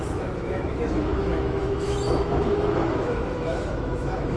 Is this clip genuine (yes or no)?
no